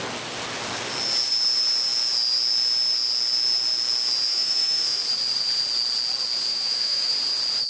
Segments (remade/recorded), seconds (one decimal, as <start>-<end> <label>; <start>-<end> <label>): 0.0-4.3 recorded; 4.3-5.0 remade; 5.0-6.5 recorded; 6.5-7.1 remade; 7.1-7.7 recorded